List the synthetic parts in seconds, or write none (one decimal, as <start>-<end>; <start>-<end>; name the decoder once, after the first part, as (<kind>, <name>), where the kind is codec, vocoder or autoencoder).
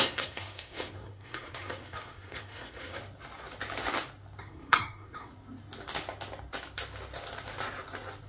0.0-3.0 (codec, SNAC); 4.4-5.3